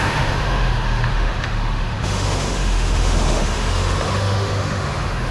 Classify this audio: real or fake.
fake